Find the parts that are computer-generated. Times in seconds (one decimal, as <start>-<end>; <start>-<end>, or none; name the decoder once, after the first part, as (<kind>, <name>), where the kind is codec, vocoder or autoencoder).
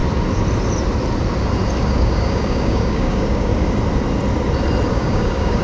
1.8-3.5 (codec, DAC); 4.9-5.6